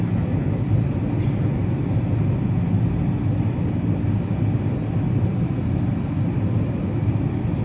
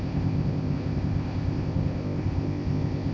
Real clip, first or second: first